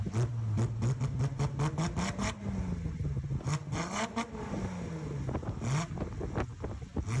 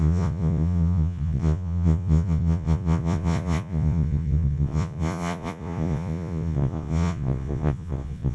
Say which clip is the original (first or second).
first